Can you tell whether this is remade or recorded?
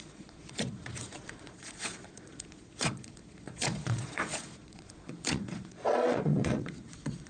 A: remade